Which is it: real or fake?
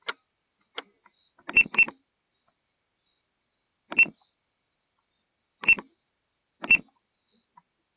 real